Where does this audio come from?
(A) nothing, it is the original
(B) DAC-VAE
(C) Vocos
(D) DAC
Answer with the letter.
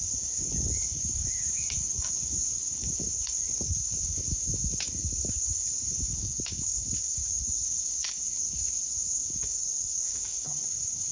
D